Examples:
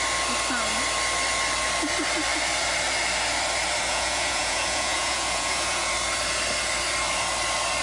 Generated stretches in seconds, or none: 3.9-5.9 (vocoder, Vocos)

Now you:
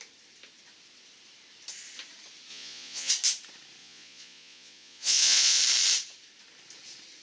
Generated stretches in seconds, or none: 2.5-3.1 (vocoder, Vocos); 3.8-5.6